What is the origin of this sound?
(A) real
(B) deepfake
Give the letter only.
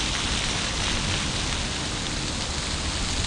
A